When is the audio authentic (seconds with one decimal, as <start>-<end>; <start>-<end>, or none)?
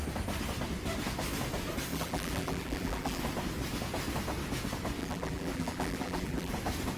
0.0-1.9; 3.2-5.0; 6.5-7.0